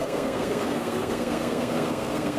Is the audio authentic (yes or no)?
no